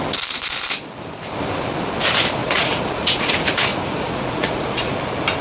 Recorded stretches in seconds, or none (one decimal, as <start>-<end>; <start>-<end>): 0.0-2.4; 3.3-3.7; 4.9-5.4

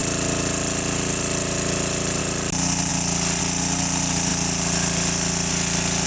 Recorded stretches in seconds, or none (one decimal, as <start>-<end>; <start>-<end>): 0.0-6.1

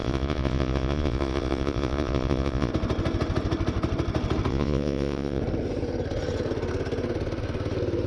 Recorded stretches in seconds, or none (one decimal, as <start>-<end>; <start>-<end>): 2.7-4.5; 5.4-8.1